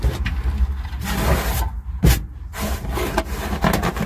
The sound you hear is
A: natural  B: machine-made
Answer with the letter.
A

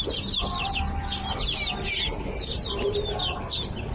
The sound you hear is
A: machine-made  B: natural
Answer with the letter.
B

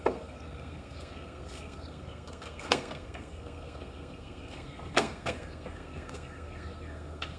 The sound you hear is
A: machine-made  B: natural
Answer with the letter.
A